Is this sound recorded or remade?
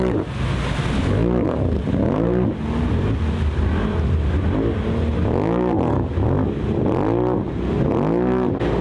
recorded